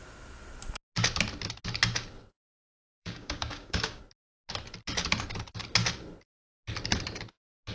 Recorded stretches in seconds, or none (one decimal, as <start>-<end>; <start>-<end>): 0.0-2.5; 4.0-7.7